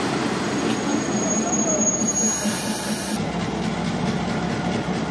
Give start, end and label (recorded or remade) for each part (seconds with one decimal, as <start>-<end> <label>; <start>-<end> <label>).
0.0-5.1 recorded

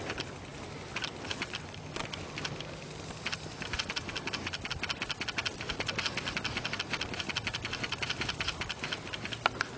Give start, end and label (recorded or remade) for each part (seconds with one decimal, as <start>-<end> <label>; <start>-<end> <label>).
0.0-9.8 recorded

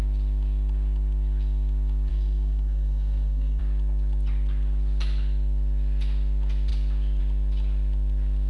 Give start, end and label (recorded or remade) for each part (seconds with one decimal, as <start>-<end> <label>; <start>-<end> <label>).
0.0-2.1 recorded; 2.1-3.6 remade; 3.6-8.5 recorded